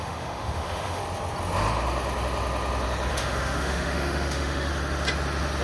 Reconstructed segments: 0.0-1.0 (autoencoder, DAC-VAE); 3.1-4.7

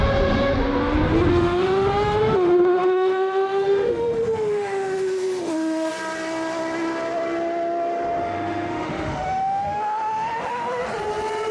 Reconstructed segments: 1.3-5.9 (autoencoder, DAC-VAE); 8.2-10.8

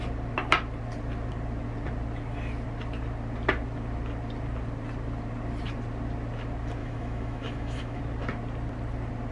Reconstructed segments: 6.8-8.0 (autoencoder, DAC-VAE)

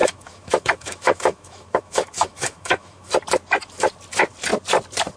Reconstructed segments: 0.0-3.1 (autoencoder, DAC-VAE)

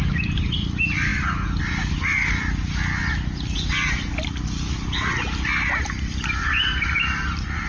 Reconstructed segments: none

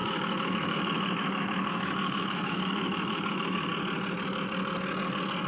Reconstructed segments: 0.0-3.7 (autoencoder, DAC-VAE)